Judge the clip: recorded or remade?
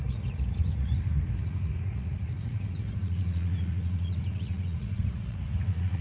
remade